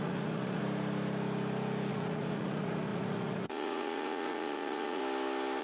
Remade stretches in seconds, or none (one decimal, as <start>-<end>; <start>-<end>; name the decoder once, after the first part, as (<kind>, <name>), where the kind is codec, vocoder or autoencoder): 0.0-0.6 (vocoder, Vocos); 1.9-5.0

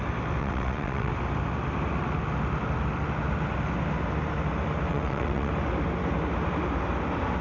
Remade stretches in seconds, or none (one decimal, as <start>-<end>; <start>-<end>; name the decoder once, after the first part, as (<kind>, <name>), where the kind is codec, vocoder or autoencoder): 0.4-1.1 (vocoder, WaveNeXt); 4.9-5.5

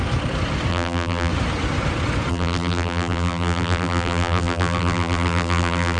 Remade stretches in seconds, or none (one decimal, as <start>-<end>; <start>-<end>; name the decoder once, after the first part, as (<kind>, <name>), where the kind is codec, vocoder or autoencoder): 0.7-1.3 (vocoder, BigVGAN v2); 2.3-6.0

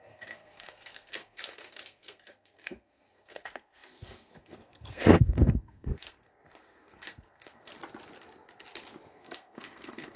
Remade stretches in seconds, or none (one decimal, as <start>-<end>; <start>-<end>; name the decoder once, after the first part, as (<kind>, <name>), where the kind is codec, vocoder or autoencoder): 0.0-7.7 (codec, SNAC); 9.1-10.2

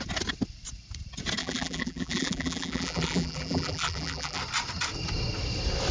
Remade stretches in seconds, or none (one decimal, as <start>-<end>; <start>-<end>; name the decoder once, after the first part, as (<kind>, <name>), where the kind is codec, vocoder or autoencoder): 1.4-4.4 (vocoder, BigVGAN v2)

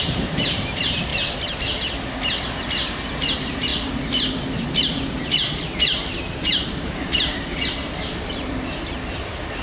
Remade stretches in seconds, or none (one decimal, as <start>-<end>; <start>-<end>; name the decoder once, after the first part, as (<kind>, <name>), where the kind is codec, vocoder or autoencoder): 0.0-1.1 (vocoder, BigVGAN v2); 3.2-3.7; 4.9-8.1; 9.2-9.6

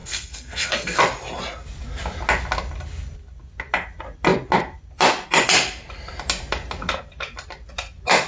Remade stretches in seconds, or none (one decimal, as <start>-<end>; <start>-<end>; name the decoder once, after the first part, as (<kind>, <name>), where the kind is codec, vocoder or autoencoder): 0.0-1.0 (codec, SNAC)

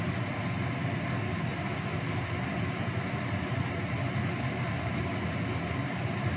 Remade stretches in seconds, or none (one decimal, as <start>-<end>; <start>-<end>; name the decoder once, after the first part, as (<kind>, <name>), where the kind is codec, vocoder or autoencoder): none